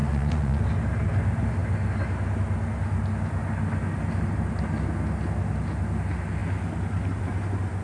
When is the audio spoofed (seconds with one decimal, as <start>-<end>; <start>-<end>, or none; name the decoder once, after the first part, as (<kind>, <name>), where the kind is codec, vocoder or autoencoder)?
0.0-0.6 (vocoder, Vocos)